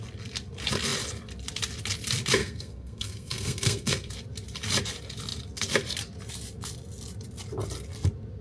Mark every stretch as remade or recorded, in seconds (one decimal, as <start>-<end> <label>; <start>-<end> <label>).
0.0-2.4 recorded; 2.4-4.1 remade; 4.1-8.4 recorded